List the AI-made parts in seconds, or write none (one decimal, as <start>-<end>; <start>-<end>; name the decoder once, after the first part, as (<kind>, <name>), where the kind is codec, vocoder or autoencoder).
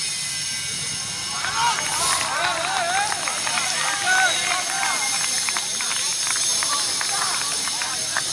none